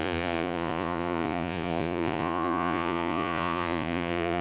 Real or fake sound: fake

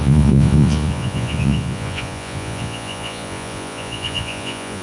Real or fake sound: fake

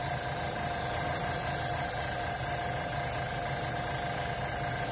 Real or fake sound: real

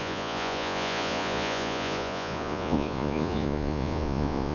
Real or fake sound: fake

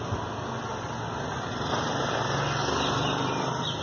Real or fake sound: real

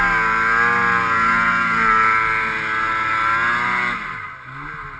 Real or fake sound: real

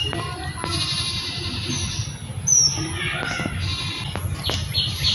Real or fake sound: real